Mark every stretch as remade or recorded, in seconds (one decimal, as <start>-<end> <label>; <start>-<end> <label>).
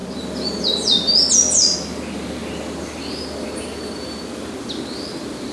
0.0-5.5 recorded